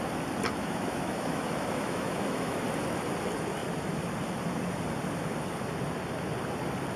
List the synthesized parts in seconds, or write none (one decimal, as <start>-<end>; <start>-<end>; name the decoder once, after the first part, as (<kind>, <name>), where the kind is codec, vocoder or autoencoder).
0.6-2.6 (autoencoder, DAC-VAE)